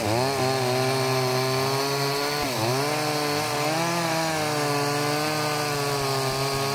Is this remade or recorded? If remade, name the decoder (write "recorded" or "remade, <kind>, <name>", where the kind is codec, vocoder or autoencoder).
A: recorded